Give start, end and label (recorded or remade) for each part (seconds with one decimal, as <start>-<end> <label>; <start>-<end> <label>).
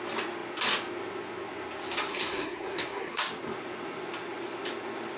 0.0-2.1 recorded; 2.1-3.2 remade; 3.2-5.2 recorded